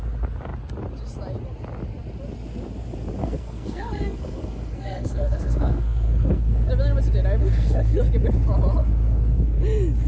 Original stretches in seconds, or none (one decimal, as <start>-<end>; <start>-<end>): 0.0-3.2; 6.7-7.4; 8.0-8.8; 9.6-10.1

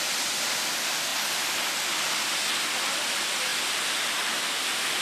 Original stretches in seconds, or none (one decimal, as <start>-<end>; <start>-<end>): 0.0-5.0

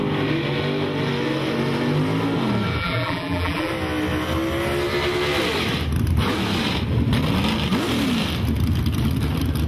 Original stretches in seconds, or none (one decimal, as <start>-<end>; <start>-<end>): 0.0-2.8; 3.7-9.7

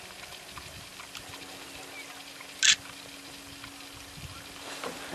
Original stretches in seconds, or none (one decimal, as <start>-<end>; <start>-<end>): 0.0-5.1

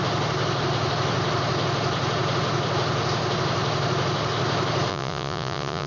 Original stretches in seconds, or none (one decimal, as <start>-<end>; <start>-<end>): 0.0-4.9

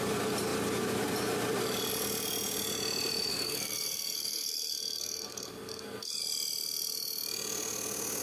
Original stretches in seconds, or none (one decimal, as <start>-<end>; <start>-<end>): 0.0-3.3; 6.2-8.2